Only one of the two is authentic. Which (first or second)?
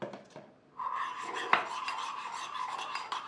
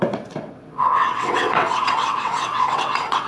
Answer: first